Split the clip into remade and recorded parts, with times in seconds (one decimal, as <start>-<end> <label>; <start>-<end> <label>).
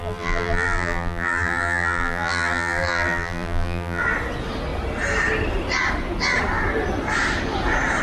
0.0-4.0 remade; 4.0-8.0 recorded